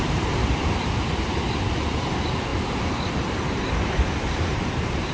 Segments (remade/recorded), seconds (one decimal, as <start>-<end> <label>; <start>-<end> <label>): 0.0-0.4 remade; 0.4-2.0 recorded; 2.0-2.5 remade; 2.5-3.1 recorded; 3.1-5.1 remade